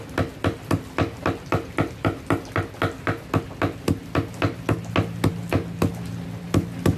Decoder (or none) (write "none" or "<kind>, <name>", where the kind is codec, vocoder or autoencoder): none